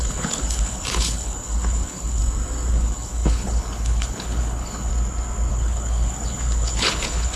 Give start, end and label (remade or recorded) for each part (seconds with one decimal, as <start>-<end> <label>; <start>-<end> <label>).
0.0-2.2 remade; 2.2-2.7 recorded; 2.7-4.9 remade; 4.9-5.5 recorded; 5.5-7.4 remade